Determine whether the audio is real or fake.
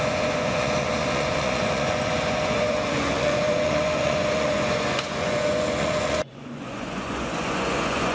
fake